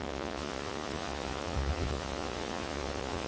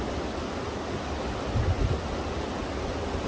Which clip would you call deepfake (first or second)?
first